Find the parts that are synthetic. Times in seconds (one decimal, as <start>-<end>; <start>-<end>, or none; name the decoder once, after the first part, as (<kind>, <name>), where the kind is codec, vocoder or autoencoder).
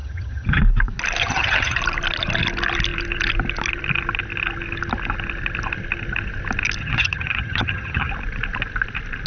0.0-0.6 (vocoder, HiFi-GAN); 1.2-1.8; 6.8-8.1